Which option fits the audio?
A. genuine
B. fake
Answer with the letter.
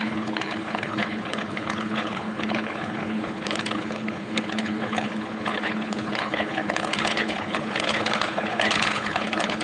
B